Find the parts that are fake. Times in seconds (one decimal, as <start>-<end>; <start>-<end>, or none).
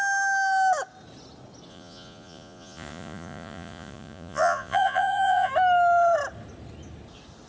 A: 1.7-5.5